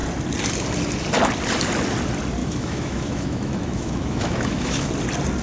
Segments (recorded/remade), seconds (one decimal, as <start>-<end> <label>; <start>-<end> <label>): 0.0-2.4 recorded; 2.4-4.9 remade; 4.9-5.4 recorded